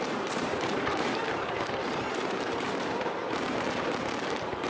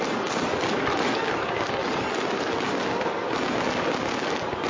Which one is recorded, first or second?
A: second